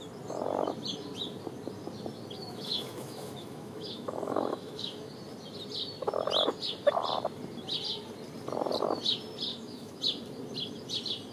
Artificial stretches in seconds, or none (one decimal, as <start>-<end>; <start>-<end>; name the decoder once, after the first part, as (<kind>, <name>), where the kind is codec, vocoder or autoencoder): 2.4-5.1 (autoencoder, DAC-VAE); 9.5-10.0